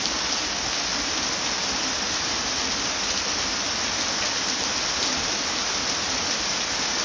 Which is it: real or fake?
real